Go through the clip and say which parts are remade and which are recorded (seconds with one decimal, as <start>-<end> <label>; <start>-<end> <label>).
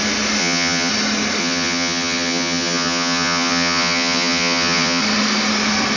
0.0-0.4 recorded; 0.4-0.9 remade; 0.9-1.4 recorded; 1.4-5.0 remade; 5.0-6.0 recorded